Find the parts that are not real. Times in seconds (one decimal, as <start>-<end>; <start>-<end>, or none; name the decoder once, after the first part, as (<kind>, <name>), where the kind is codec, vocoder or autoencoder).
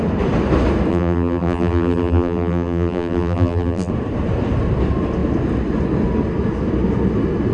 0.9-3.9 (vocoder, BigVGAN v2)